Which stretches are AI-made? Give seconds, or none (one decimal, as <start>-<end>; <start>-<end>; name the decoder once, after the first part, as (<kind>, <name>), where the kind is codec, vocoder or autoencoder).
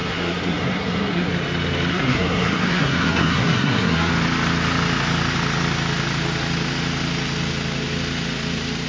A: 0.0-1.3 (codec, SNAC); 1.9-4.1